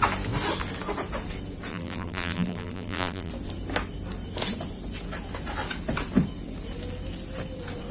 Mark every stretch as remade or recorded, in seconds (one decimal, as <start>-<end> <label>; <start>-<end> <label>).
0.0-1.7 recorded; 1.7-3.3 remade; 3.3-7.9 recorded